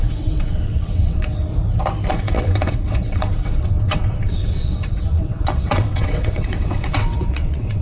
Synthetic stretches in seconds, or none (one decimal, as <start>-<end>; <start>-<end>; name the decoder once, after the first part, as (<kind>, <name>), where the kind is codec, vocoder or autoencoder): 0.0-1.5 (vocoder, WaveNeXt); 2.1-7.8